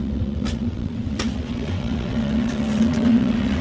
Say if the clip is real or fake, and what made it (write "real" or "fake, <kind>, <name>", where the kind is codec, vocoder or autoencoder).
fake, vocoder, WaveNeXt